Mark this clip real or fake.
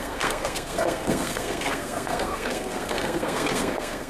fake